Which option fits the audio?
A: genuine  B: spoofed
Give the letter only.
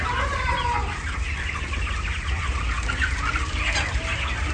A